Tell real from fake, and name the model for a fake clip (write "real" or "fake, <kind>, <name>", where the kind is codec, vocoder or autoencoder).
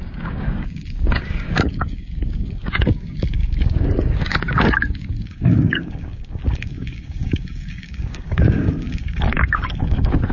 fake, codec, DAC